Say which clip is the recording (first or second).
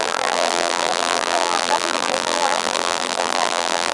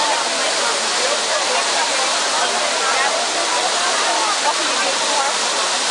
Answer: second